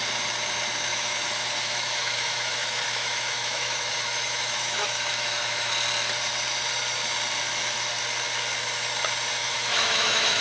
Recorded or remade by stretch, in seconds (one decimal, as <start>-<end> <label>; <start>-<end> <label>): 0.0-0.9 recorded; 0.9-5.7 remade; 5.7-9.4 recorded; 9.4-10.4 remade